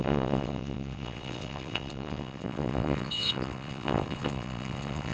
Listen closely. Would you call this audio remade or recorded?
remade